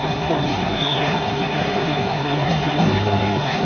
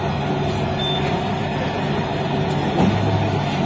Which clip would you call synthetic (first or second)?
first